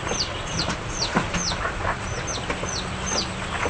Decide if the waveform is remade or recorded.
recorded